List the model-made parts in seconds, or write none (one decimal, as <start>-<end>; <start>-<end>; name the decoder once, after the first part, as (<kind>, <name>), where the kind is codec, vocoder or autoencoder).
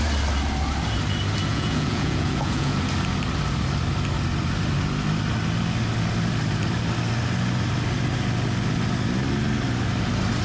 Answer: 1.5-2.8 (vocoder, Vocos)